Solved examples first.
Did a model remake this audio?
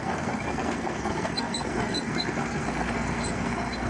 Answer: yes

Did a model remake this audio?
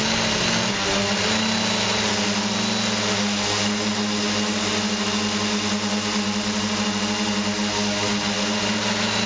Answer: no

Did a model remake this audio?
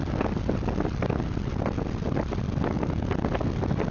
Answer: no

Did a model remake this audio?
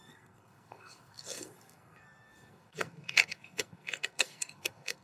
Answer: yes